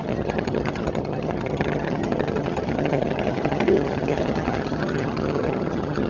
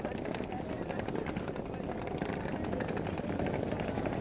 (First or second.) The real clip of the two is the second